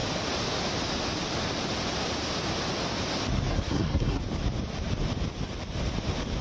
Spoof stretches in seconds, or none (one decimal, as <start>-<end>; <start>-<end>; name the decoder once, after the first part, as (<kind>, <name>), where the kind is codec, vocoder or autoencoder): 3.5-4.2 (codec, SNAC)